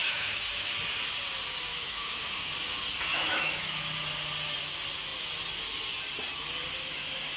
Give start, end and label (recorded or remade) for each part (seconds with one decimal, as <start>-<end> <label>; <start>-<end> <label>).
0.0-0.7 remade; 0.7-1.7 recorded; 1.7-2.5 remade; 2.5-3.1 recorded; 3.1-3.8 remade; 3.8-7.4 recorded